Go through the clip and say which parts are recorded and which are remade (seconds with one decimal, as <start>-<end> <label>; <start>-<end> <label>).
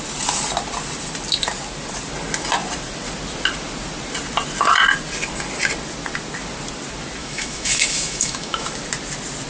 0.0-7.2 recorded; 7.2-8.7 remade; 8.7-9.5 recorded